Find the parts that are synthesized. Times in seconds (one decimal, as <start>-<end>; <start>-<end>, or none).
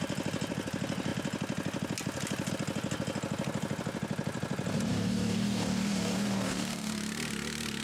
4.9-6.9